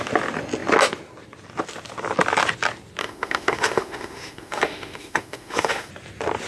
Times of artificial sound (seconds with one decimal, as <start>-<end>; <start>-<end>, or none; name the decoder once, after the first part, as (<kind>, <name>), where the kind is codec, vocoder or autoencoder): 3.0-5.9 (autoencoder, DAC-VAE)